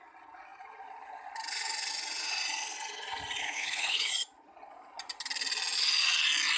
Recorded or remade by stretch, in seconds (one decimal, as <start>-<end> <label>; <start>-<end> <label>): 0.0-3.4 recorded; 3.4-4.1 remade; 4.1-6.6 recorded